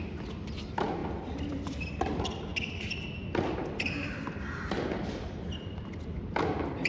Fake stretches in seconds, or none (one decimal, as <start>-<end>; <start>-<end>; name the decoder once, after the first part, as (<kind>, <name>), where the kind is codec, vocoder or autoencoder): 0.0-1.0 (vocoder, BigVGAN v2); 1.5-2.5; 5.8-6.9